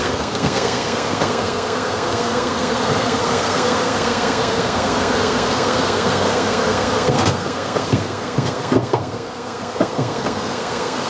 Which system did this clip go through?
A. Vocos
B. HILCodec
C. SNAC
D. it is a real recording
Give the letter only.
C